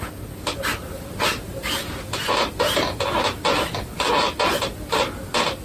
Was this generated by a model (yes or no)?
no